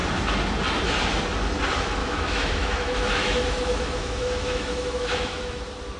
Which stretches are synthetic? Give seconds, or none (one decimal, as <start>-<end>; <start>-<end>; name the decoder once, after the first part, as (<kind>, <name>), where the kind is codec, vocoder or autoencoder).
2.0-5.6 (autoencoder, DAC-VAE)